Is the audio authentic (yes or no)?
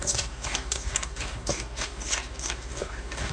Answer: no